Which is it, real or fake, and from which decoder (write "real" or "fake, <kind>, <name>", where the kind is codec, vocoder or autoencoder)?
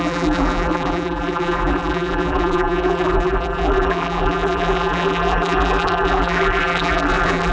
fake, vocoder, BigVGAN v2